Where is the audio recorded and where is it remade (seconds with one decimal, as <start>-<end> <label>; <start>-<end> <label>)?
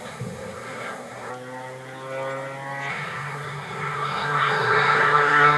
0.0-1.3 remade; 1.3-2.9 recorded; 2.9-5.6 remade